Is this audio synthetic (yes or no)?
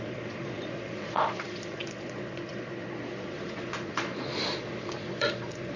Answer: yes